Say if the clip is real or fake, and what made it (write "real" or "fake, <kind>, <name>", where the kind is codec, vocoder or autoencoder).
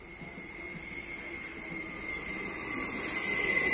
real